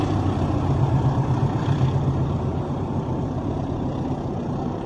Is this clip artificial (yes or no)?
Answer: yes